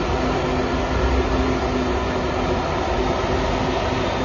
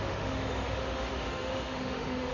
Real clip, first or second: first